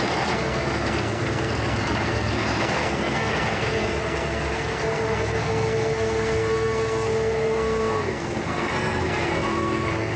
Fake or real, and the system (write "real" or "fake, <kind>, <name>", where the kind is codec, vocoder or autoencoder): fake, codec, SNAC